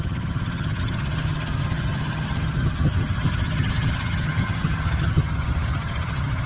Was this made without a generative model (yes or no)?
no